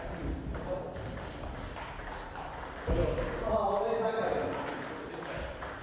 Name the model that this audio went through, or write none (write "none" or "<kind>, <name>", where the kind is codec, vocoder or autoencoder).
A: none